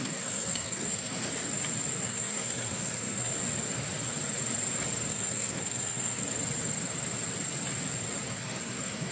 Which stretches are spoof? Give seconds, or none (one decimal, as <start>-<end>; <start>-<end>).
0.0-1.3; 2.0-3.3; 5.1-6.2; 8.3-9.1